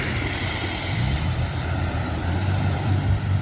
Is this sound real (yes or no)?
no